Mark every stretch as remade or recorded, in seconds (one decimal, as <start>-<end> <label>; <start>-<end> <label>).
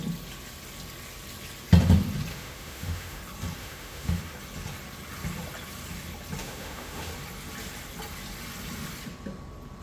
0.0-2.3 recorded; 2.3-3.2 remade; 3.2-3.6 recorded; 3.6-4.2 remade; 4.2-6.4 recorded; 6.4-7.1 remade; 7.1-9.8 recorded